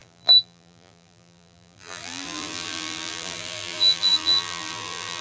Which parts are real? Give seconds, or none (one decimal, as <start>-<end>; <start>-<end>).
none